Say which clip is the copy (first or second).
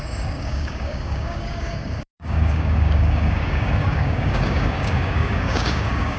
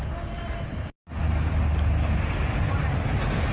first